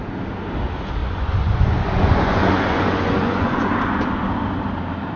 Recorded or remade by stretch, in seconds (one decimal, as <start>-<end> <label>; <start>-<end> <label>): 0.0-1.0 recorded; 1.0-3.7 remade; 3.7-5.2 recorded